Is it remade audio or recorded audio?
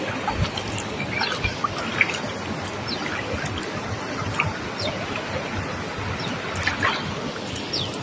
recorded